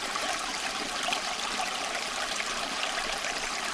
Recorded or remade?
remade